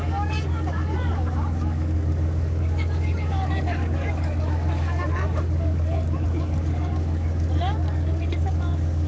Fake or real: fake